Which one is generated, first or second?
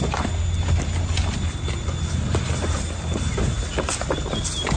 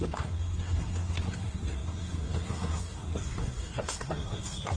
second